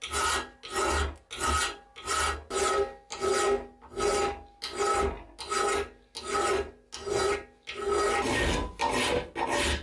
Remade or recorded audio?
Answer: recorded